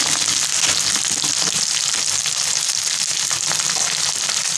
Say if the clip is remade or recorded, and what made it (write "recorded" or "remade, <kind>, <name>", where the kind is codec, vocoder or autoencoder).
recorded